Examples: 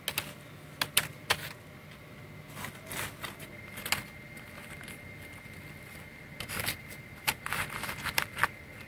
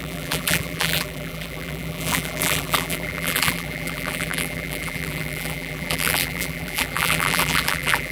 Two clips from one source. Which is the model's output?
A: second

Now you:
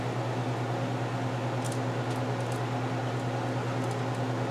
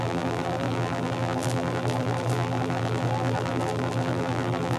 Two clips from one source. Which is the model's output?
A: second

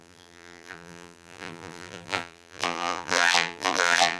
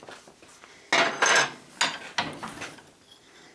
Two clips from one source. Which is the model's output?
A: first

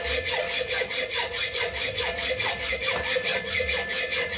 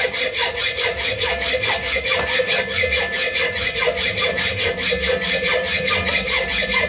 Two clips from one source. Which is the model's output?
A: first